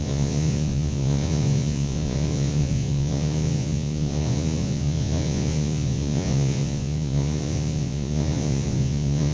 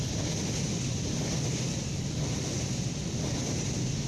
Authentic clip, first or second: second